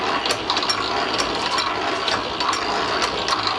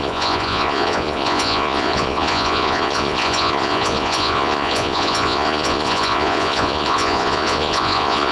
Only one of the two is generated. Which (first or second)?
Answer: second